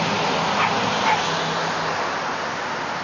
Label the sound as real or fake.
real